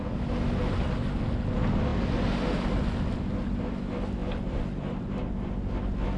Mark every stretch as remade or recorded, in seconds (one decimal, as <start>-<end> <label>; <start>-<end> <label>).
0.0-4.2 recorded; 4.2-5.5 remade; 5.5-6.2 recorded